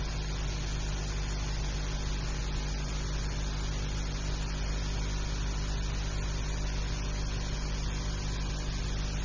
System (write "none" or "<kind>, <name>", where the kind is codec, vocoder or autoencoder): none